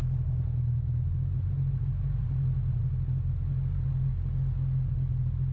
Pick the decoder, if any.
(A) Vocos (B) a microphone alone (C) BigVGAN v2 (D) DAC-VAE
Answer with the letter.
B